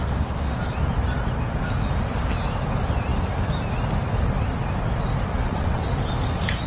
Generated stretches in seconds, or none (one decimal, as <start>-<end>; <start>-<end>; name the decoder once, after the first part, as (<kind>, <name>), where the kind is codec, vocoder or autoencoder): 5.3-5.8 (vocoder, WaveNeXt)